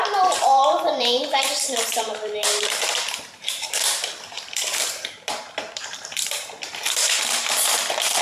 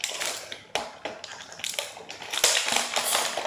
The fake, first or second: first